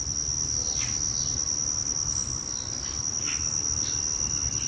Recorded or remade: recorded